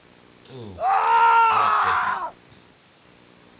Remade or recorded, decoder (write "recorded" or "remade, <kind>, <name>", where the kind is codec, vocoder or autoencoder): recorded